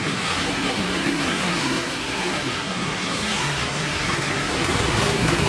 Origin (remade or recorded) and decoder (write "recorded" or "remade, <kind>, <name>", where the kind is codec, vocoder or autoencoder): remade, codec, SNAC